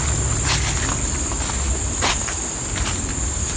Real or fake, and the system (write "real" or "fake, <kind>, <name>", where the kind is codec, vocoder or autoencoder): real